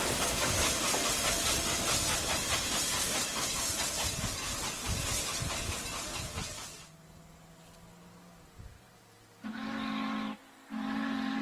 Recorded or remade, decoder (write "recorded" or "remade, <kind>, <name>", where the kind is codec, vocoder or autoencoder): recorded